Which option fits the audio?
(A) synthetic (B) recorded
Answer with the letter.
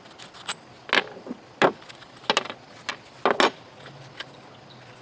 B